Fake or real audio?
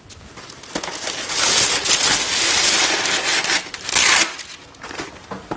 real